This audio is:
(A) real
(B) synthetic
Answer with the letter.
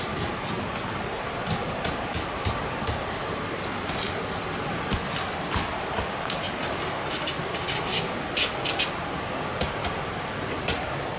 A